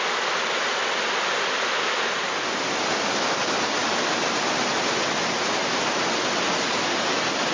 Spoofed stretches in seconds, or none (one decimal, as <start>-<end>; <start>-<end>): none